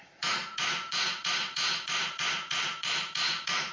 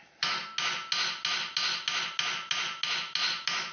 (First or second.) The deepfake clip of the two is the first